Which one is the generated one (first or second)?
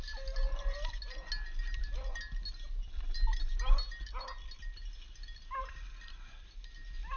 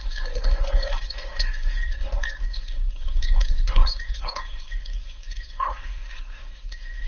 second